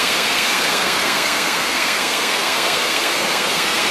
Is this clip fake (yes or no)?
yes